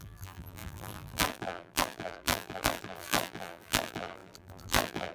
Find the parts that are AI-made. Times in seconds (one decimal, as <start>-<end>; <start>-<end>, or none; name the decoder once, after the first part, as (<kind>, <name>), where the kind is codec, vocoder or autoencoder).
0.0-5.1 (vocoder, BigVGAN v2)